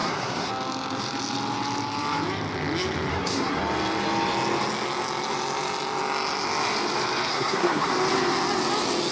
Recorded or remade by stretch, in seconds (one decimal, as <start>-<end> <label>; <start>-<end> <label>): 0.0-0.5 remade; 0.5-3.1 recorded; 3.1-3.6 remade; 3.6-7.3 recorded; 7.3-7.9 remade; 7.9-9.1 recorded